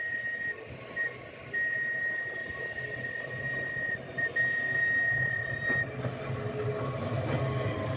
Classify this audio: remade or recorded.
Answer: recorded